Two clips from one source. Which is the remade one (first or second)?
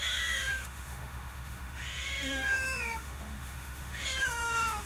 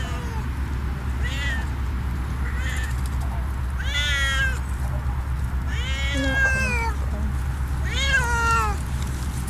first